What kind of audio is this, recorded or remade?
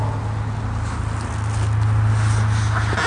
recorded